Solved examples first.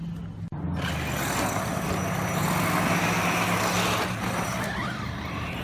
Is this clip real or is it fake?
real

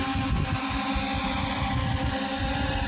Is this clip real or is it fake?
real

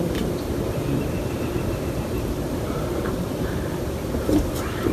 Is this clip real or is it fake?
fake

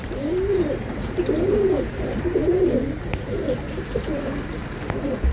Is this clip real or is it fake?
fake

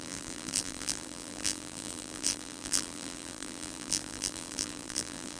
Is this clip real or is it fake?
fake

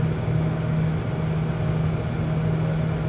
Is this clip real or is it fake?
real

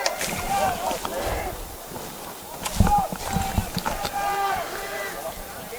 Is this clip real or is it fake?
real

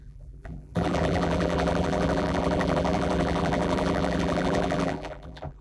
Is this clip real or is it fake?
fake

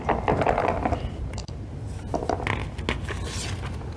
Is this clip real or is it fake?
real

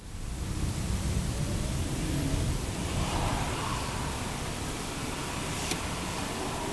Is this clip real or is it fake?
fake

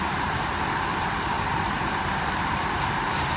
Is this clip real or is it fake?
fake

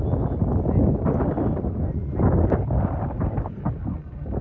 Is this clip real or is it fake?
real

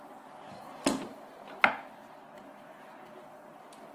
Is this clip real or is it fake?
real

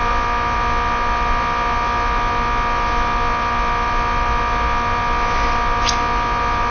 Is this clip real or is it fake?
real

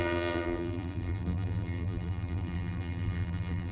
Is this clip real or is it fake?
fake